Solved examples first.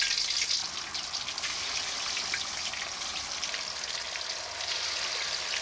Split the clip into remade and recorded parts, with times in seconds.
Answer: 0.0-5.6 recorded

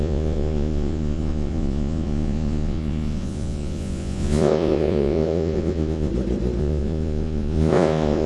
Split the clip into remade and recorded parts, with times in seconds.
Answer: 0.0-6.1 remade; 6.1-6.6 recorded; 6.6-8.3 remade